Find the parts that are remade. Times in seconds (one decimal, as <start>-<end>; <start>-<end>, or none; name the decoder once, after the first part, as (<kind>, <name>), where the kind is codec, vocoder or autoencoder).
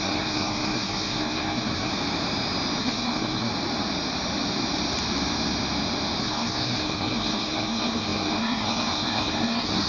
0.0-1.9 (codec, SNAC); 2.8-3.5; 6.2-9.9